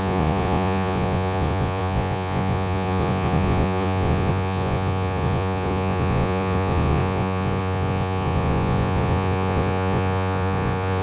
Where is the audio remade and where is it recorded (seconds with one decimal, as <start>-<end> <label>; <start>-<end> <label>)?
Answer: 0.0-11.0 remade